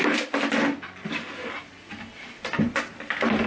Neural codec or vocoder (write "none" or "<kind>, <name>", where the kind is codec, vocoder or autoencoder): none